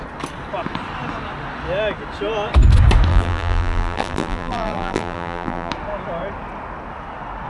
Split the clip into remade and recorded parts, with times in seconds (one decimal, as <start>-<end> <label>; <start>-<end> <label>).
0.0-3.1 recorded; 3.1-5.7 remade; 5.7-7.5 recorded